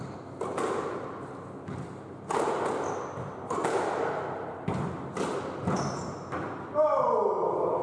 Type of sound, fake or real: real